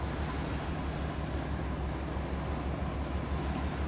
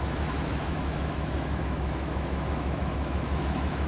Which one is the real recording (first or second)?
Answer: first